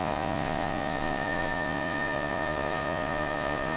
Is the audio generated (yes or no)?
yes